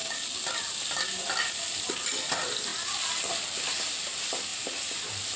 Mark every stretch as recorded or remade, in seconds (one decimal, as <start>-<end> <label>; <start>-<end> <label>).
0.0-1.9 remade; 1.9-5.4 recorded